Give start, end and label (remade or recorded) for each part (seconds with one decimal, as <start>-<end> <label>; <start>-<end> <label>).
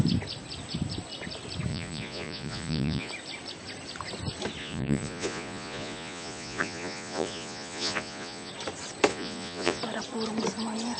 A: 0.0-1.7 recorded; 1.7-3.1 remade; 3.1-4.6 recorded; 4.6-8.5 remade; 8.5-9.1 recorded; 9.1-9.8 remade; 9.8-11.0 recorded